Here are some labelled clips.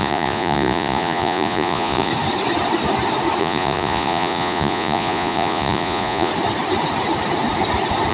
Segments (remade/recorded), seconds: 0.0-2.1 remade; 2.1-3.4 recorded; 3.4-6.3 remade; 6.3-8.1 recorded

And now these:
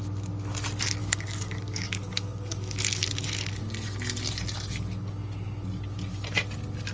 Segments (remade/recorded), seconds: 0.0-1.0 recorded; 1.0-3.6 remade; 3.6-6.9 recorded

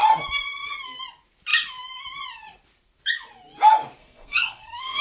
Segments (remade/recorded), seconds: 0.0-4.0 recorded; 4.0-5.0 remade

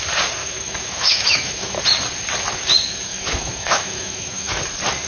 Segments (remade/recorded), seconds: 0.0-0.4 recorded; 0.4-1.8 remade; 1.8-3.1 recorded; 3.1-4.6 remade; 4.6-5.1 recorded